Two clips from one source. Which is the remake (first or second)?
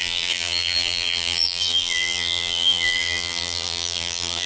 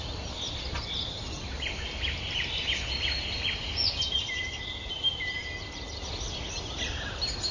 first